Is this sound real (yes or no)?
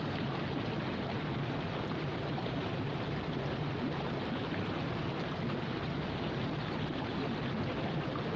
yes